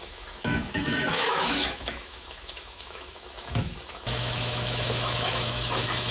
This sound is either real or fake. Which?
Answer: fake